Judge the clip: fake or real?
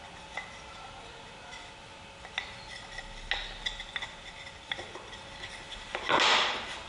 real